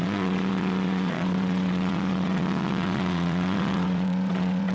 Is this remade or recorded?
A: remade